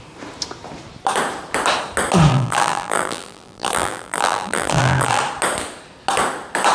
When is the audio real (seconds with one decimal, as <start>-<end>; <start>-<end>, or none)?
0.0-2.3; 5.2-6.7